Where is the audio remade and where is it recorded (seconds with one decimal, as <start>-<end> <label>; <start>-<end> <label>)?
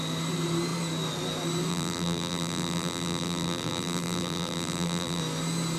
0.0-1.7 recorded; 1.7-5.2 remade; 5.2-5.8 recorded